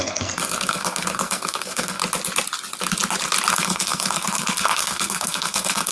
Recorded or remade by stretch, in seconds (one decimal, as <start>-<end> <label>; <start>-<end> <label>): 0.0-2.0 remade; 2.0-3.5 recorded; 3.5-5.9 remade